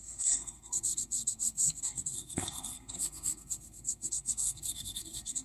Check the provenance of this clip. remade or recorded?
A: remade